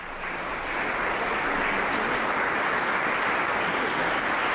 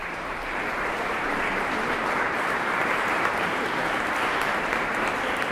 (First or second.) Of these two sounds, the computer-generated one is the second